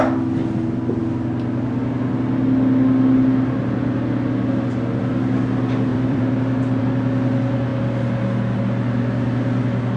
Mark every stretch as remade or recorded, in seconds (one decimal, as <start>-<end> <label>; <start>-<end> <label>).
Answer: 0.0-5.9 recorded; 5.9-6.8 remade; 6.8-10.0 recorded